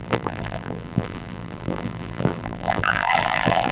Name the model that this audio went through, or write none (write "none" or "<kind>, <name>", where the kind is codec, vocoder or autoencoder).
vocoder, BigVGAN v2